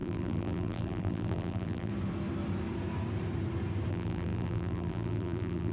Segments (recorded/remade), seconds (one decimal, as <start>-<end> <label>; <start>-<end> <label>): 0.0-1.9 remade; 1.9-3.9 recorded; 3.9-5.7 remade